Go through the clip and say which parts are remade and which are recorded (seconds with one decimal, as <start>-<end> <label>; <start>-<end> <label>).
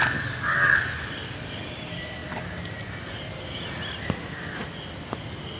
0.0-5.6 recorded